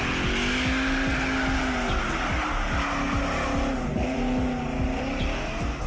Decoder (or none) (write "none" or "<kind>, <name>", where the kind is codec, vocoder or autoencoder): none